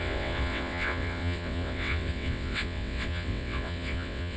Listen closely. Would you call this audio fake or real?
fake